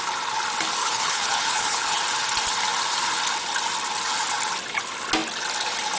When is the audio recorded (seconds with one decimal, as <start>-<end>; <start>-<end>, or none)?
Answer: 0.0-0.8; 2.0-6.0